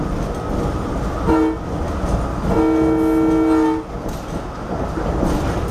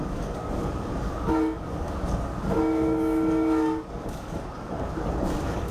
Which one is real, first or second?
first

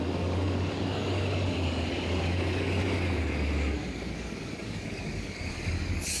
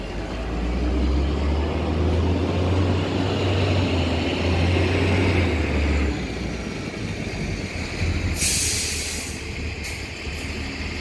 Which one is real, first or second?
second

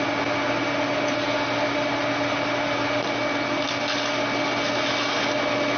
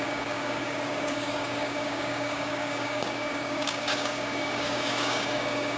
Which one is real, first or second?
first